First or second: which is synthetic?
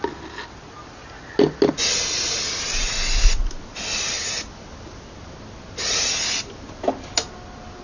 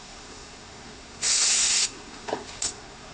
second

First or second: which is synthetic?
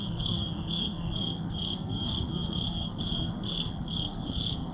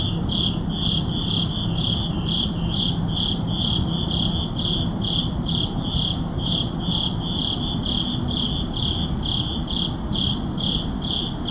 first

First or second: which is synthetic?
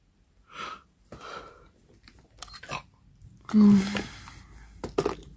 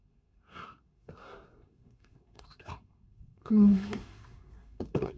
second